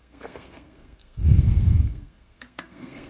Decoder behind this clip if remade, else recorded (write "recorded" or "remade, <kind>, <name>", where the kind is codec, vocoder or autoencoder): remade, codec, SNAC